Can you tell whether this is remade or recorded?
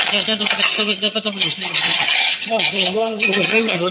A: remade